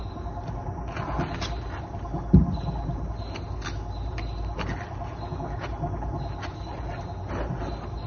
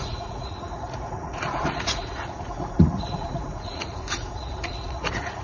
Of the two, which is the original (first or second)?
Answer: first